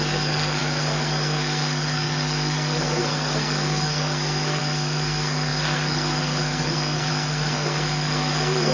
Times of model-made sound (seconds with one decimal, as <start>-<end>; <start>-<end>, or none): 0.0-8.7